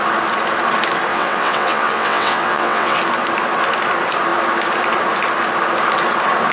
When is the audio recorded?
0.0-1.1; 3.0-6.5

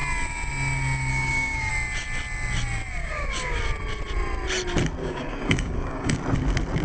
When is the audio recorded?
0.0-1.1; 1.7-3.0; 3.6-5.0; 6.2-6.8

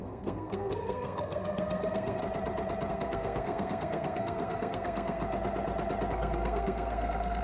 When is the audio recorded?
2.2-2.9; 5.2-6.1

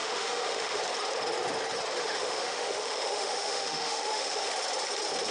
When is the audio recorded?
0.8-2.0; 4.5-5.3